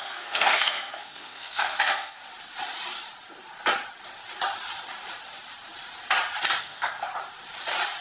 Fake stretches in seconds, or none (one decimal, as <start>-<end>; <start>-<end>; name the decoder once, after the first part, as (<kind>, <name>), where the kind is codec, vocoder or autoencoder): 0.0-2.2 (codec, SNAC); 6.6-7.1